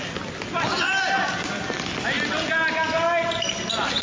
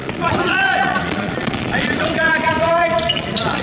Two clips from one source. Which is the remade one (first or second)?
second